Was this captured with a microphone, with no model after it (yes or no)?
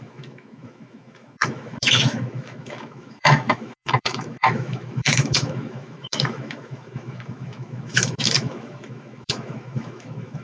no